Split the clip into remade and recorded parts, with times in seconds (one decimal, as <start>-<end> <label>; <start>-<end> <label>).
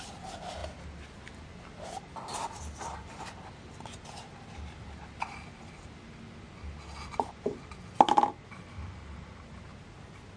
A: 0.0-10.4 recorded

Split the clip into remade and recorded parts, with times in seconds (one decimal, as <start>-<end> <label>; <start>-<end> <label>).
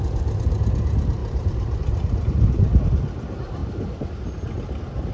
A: 0.0-1.2 recorded; 1.2-2.8 remade; 2.8-3.6 recorded; 3.6-4.1 remade; 4.1-5.1 recorded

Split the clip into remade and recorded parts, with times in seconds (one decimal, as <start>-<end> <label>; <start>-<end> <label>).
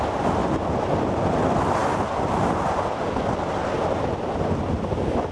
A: 0.0-5.3 recorded